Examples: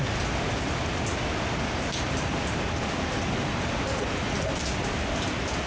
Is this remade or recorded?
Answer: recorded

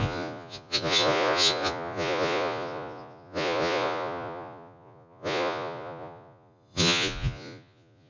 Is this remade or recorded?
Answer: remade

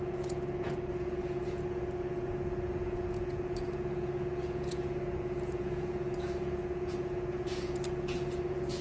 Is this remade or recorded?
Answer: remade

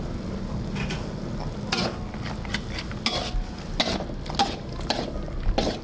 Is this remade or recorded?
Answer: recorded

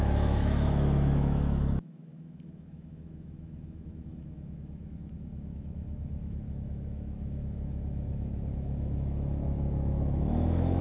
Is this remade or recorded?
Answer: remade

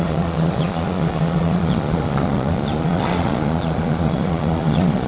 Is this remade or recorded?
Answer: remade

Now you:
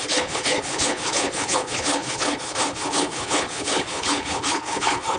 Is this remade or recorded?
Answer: remade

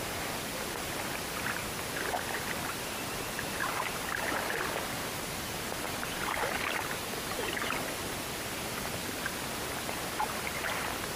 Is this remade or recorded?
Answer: recorded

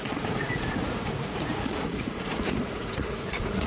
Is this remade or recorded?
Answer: remade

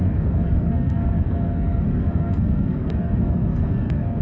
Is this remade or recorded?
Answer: remade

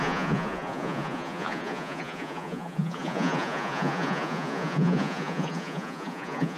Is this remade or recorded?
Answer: remade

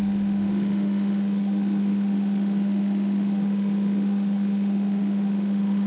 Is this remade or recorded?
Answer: remade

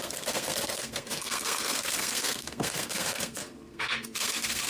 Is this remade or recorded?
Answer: remade